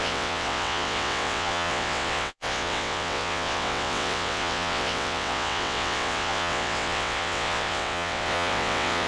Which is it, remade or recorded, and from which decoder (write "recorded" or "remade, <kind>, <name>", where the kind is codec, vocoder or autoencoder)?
remade, vocoder, WaveNeXt